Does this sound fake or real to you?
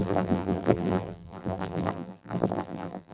fake